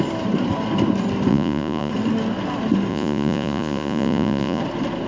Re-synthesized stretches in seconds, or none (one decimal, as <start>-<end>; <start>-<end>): 1.3-1.9; 2.9-4.6